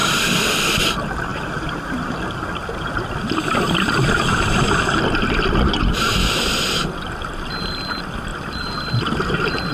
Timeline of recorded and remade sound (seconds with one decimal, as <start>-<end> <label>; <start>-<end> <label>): 0.0-1.3 recorded; 1.3-5.9 remade; 5.9-8.3 recorded; 8.3-9.0 remade; 9.0-9.7 recorded